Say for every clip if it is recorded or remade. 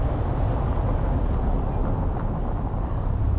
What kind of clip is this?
recorded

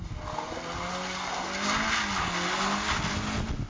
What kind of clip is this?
recorded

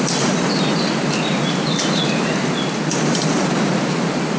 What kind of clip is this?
recorded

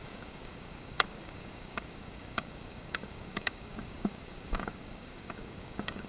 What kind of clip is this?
remade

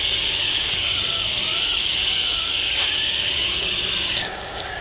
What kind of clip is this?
remade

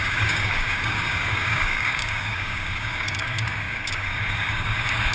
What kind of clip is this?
remade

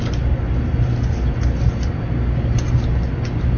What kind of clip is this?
recorded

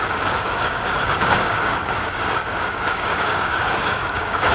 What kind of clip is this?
remade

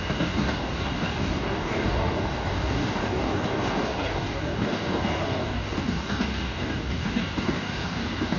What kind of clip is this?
remade